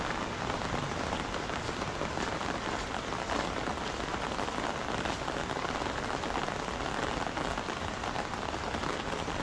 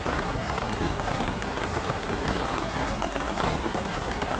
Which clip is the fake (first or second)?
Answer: second